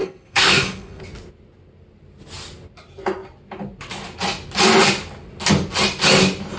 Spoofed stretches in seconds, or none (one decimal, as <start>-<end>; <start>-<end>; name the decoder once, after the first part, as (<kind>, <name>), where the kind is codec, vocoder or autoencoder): 0.0-1.0 (codec, SNAC)